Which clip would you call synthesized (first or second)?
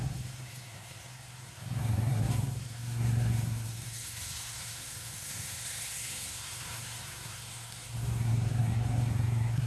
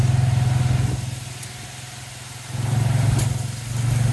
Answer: first